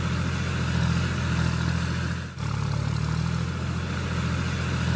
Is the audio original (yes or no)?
yes